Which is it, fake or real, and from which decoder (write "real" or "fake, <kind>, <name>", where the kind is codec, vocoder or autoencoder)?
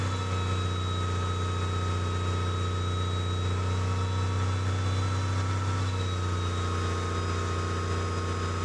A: real